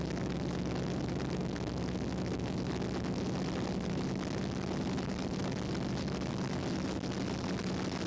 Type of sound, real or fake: real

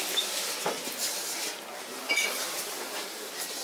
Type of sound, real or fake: real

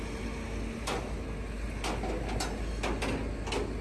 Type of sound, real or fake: real